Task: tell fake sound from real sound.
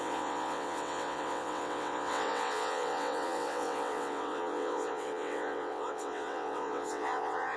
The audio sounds fake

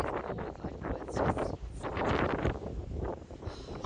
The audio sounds fake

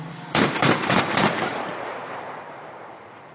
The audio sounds fake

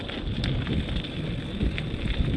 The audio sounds real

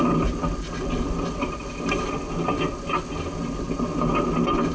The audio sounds real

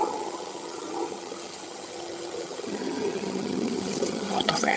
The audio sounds fake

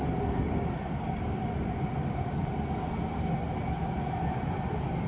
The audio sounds real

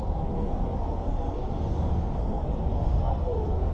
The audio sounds fake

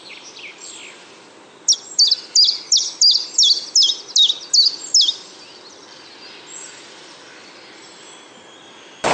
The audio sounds real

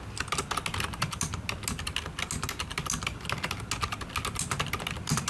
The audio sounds real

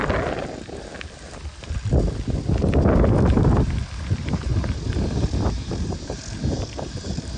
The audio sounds fake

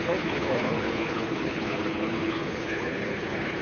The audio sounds fake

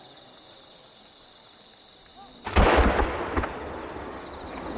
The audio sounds real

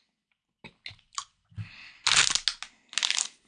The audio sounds real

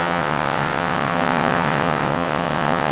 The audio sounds fake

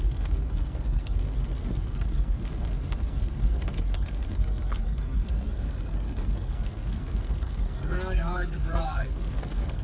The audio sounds fake